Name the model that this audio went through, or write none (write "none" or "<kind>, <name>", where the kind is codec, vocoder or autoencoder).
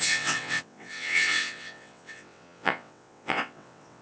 vocoder, WaveNeXt